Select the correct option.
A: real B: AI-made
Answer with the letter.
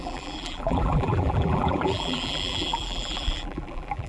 B